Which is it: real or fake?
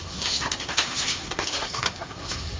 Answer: fake